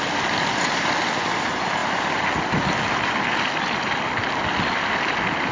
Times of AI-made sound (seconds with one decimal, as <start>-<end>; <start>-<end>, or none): none